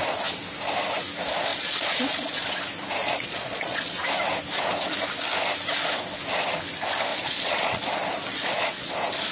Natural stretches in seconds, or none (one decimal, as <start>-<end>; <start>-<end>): 0.0-1.5; 2.6-3.0; 4.0-7.1; 7.8-8.3; 8.9-9.3